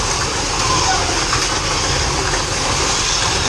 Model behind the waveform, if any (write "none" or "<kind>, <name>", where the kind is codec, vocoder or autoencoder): none